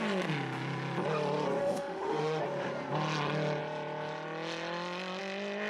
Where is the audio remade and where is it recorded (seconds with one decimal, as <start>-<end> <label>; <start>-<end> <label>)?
0.0-1.6 recorded; 1.6-2.4 remade; 2.4-5.7 recorded